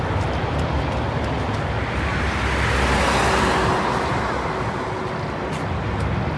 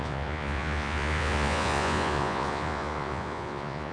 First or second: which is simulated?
second